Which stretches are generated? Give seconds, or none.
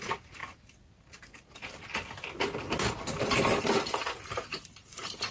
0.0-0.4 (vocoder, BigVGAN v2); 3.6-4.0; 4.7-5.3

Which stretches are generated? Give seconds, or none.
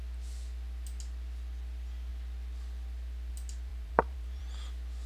3.7-4.4 (vocoder, BigVGAN v2)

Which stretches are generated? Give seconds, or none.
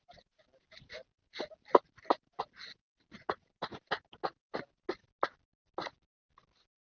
none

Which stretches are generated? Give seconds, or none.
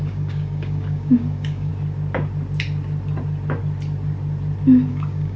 0.0-1.7 (codec, DAC); 4.9-5.4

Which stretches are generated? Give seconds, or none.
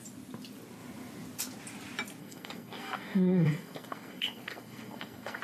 2.2-5.4 (codec, SNAC)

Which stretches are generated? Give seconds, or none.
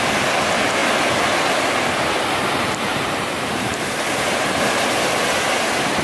2.9-3.8 (vocoder, BigVGAN v2)